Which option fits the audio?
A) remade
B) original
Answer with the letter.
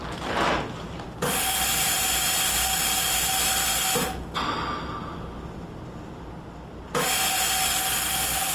B